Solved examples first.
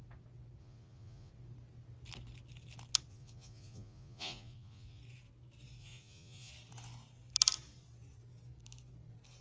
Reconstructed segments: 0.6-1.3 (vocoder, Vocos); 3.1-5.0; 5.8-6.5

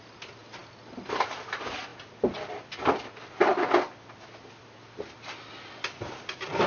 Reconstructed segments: none

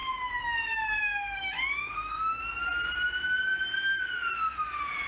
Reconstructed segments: 0.0-2.4 (autoencoder, DAC-VAE)

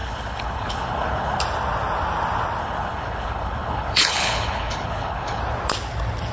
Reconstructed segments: 0.0-1.4 (codec, HILCodec); 2.6-5.4

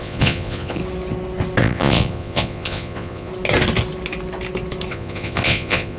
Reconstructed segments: 0.0-0.8 (vocoder, Vocos); 1.6-3.3; 4.9-6.0

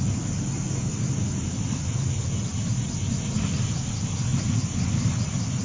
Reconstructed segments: none

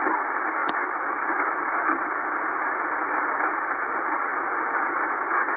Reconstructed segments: 0.0-4.3 (vocoder, BigVGAN v2); 5.0-5.6